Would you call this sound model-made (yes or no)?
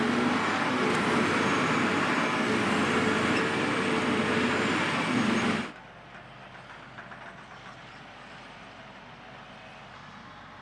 no